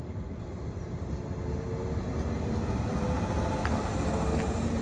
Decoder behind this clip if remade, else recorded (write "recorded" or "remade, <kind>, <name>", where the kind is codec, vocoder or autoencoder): recorded